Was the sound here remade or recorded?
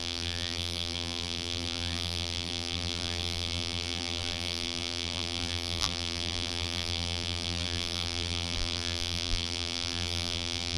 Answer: remade